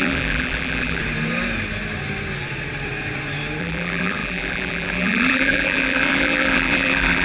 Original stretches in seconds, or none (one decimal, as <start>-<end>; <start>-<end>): 1.0-3.6